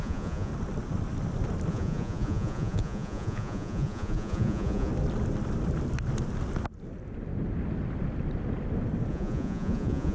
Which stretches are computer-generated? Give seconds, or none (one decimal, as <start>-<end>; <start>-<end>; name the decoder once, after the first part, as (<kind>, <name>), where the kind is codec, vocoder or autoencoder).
0.0-0.5 (vocoder, Vocos); 1.7-4.9; 9.1-10.1

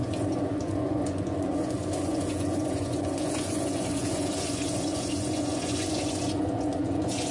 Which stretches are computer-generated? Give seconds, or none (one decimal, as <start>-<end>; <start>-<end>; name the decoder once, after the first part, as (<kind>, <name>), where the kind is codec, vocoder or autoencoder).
0.0-7.3 (vocoder, Vocos)

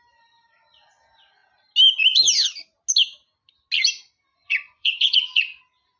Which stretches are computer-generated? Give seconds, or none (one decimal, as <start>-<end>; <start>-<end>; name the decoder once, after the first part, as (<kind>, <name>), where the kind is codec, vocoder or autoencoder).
4.3-5.6 (vocoder, Vocos)

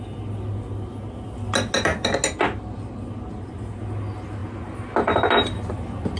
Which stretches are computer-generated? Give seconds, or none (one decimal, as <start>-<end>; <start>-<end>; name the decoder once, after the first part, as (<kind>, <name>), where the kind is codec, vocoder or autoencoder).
none

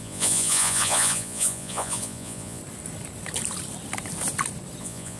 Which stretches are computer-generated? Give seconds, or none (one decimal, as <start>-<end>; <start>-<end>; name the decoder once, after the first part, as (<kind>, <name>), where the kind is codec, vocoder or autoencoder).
0.0-2.6 (vocoder, Vocos); 4.8-5.2

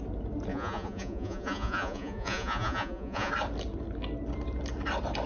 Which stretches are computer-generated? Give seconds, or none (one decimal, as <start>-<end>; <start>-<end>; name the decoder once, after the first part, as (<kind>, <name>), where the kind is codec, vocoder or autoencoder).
0.5-3.3 (vocoder, Vocos)

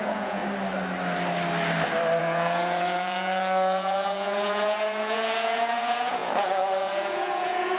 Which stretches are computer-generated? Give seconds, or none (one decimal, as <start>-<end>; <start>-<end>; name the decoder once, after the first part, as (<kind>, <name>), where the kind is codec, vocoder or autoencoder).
0.0-0.4 (vocoder, Vocos); 2.2-7.8